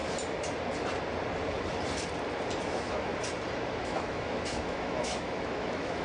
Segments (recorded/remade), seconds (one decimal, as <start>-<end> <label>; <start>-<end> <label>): 0.0-2.6 recorded; 2.6-3.1 remade; 3.1-3.8 recorded; 3.8-6.0 remade